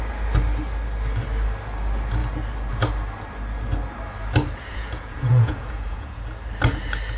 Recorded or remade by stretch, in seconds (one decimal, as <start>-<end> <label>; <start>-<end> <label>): 0.0-4.7 recorded; 4.7-6.2 remade; 6.2-7.2 recorded